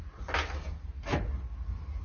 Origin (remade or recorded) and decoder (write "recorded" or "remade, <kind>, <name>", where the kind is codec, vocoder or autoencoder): recorded